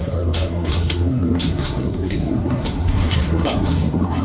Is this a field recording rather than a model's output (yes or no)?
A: no